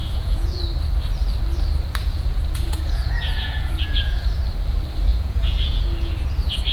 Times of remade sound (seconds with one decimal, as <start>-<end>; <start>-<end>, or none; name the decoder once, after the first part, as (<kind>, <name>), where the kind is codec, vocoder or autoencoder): 0.0-0.6 (vocoder, Vocos); 2.0-4.4; 5.1-6.3